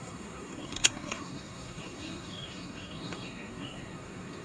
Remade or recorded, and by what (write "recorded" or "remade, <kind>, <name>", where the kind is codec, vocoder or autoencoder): remade, codec, SNAC